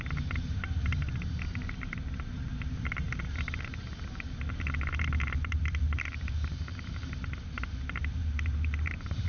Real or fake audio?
fake